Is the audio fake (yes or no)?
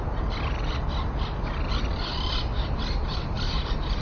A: no